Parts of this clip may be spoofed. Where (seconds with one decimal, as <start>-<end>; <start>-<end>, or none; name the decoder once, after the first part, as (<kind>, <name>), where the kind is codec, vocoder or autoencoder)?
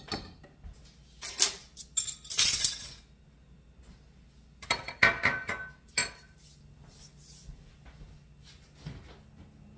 none